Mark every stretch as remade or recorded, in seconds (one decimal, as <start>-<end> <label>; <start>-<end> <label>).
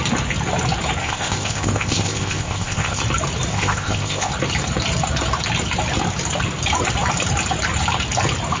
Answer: 0.0-1.0 recorded; 1.0-3.0 remade; 3.0-3.5 recorded; 3.5-4.3 remade; 4.3-8.6 recorded